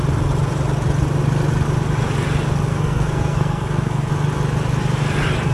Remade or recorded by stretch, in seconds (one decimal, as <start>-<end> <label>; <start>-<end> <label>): 0.0-2.7 recorded; 2.7-4.1 remade; 4.1-5.5 recorded